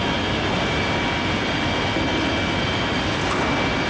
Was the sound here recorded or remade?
recorded